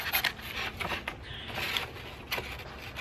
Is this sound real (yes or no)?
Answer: yes